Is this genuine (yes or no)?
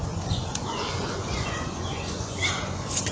no